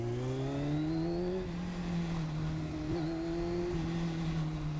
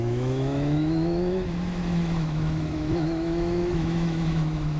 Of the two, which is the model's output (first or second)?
second